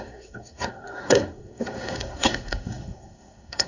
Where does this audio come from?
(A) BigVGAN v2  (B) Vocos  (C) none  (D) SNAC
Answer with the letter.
D